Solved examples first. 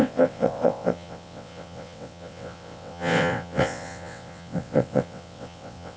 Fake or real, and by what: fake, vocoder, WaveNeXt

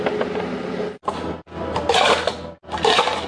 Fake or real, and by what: real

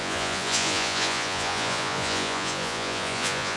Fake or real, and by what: fake, vocoder, Vocos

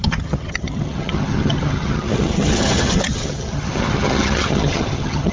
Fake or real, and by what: fake, vocoder, HiFi-GAN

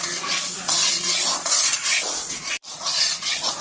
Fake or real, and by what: fake, vocoder, Vocos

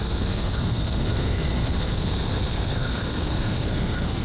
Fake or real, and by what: fake, codec, SNAC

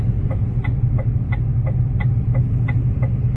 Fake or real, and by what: real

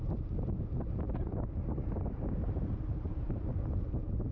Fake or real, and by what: fake, vocoder, BigVGAN v2